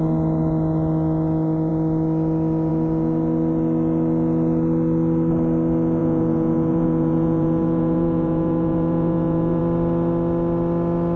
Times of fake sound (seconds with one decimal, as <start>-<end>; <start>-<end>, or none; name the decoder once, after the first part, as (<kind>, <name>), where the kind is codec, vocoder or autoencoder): 6.0-9.6 (vocoder, Vocos)